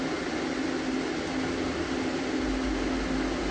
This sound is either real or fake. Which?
real